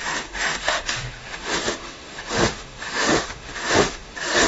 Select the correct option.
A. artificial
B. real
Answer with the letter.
A